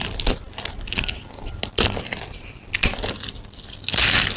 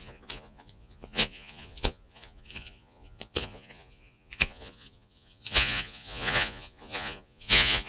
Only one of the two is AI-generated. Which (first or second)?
second